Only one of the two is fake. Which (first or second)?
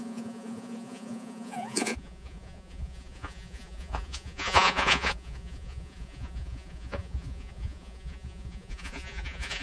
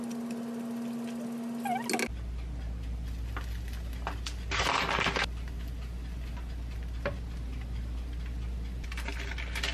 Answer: first